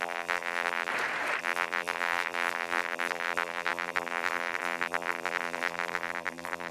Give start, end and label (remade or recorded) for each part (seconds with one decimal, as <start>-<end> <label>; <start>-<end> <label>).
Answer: 0.0-0.9 remade; 0.9-1.4 recorded; 1.4-6.7 remade